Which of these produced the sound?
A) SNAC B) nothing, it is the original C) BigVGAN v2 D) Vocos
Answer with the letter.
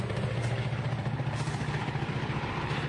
C